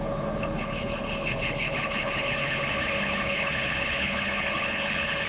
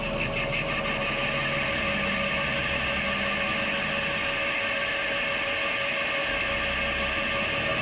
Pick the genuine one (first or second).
second